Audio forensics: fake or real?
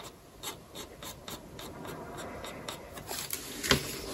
real